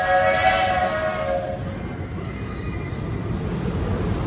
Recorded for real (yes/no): yes